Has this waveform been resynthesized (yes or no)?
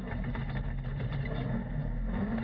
no